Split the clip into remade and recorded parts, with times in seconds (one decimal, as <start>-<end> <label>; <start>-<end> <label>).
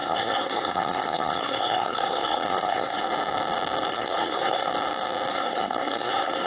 0.0-3.0 remade; 3.0-3.9 recorded; 3.9-4.7 remade; 4.7-5.3 recorded; 5.3-6.5 remade